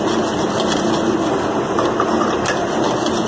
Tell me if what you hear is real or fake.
real